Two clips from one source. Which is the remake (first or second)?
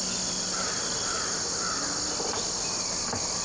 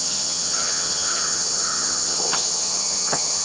second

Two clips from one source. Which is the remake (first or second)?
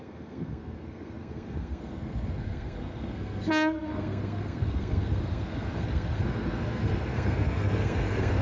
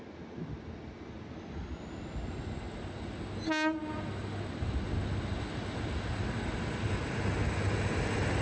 first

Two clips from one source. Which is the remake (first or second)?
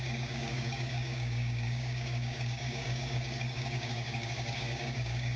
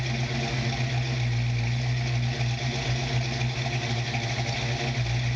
first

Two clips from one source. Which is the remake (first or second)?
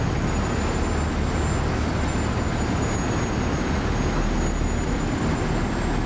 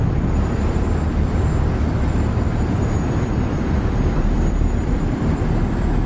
second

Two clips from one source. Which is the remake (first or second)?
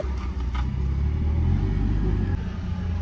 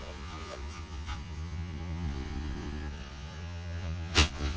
second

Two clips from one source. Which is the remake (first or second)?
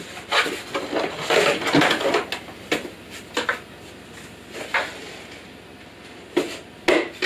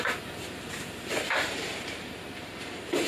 second